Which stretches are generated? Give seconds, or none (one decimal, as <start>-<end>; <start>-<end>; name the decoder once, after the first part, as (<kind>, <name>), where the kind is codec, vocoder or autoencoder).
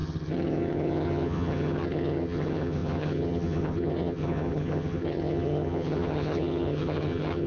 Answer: 0.0-7.5 (vocoder, HiFi-GAN)